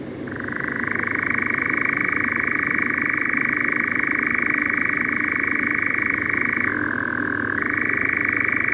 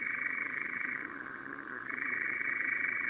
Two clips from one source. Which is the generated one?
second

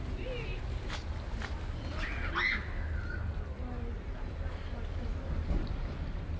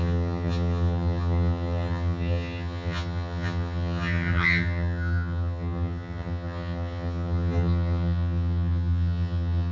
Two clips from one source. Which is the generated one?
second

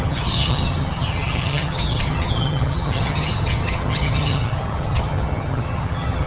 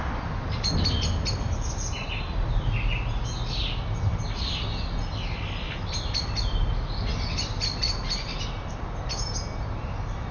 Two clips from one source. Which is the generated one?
first